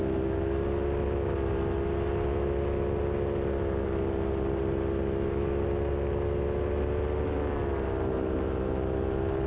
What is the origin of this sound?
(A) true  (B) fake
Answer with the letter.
A